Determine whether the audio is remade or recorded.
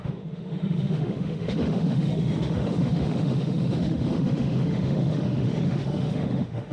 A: remade